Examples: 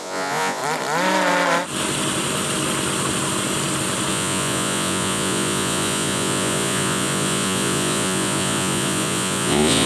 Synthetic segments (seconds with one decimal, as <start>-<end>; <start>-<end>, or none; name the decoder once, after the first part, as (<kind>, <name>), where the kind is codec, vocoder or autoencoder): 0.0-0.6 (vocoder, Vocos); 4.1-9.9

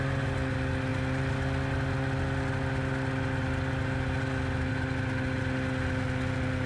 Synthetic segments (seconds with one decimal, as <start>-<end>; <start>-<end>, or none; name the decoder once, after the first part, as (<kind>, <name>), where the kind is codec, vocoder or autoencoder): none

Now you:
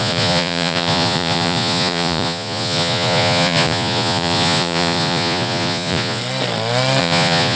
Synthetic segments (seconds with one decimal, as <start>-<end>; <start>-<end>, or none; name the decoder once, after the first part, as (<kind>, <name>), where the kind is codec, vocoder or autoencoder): 0.0-6.2 (vocoder, Vocos); 7.0-7.6

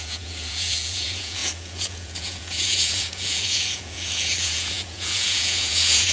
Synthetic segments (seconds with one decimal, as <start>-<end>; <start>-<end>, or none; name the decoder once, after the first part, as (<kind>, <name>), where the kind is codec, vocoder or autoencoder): 0.0-6.1 (vocoder, Vocos)

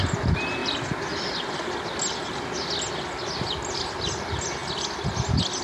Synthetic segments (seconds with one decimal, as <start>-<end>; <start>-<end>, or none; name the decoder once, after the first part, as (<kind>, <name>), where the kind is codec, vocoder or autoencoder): none

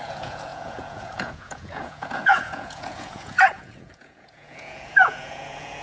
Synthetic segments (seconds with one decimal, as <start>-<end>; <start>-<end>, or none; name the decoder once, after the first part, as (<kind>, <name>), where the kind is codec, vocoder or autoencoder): 0.0-5.8 (vocoder, Vocos)

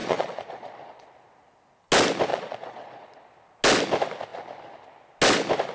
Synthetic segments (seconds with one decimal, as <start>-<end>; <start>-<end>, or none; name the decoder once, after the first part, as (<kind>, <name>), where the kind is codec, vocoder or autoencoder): 0.0-1.1 (vocoder, Vocos); 2.3-3.3

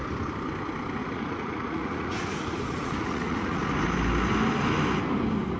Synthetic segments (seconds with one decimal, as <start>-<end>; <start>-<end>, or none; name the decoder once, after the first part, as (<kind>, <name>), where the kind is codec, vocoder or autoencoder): 1.0-3.6 (vocoder, Vocos)